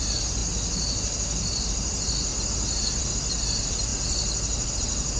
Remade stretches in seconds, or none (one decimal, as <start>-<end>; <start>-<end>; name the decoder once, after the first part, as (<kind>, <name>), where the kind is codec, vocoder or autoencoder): none